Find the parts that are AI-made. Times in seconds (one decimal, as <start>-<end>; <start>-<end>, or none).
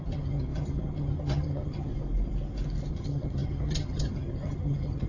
0.0-1.9; 2.9-5.1